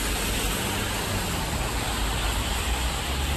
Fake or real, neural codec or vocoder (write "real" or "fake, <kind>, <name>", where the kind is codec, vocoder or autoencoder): real